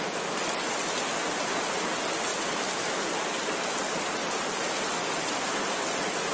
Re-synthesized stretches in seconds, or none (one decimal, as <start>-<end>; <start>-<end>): none